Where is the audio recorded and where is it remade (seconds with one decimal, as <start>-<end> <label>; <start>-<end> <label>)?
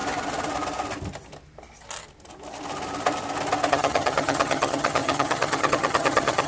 0.0-3.7 recorded; 3.7-6.5 remade